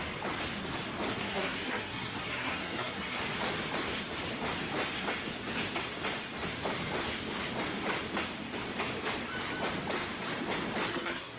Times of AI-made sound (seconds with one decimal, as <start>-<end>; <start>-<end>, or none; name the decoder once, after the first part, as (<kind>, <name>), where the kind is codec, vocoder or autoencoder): 1.1-3.2 (codec, SNAC); 10.9-11.4